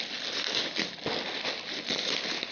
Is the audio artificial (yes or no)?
no